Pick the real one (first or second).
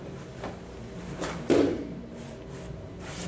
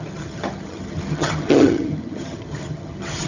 first